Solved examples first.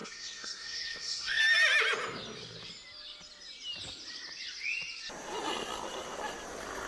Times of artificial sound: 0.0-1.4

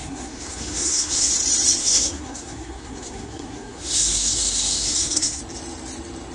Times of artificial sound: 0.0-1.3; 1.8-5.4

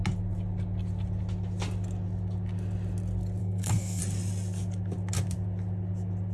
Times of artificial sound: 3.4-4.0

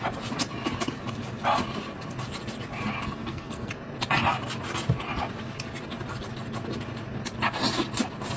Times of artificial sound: 3.2-3.7